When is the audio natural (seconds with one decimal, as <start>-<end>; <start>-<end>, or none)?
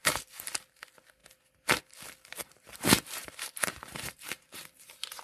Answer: 0.6-2.4; 4.6-5.2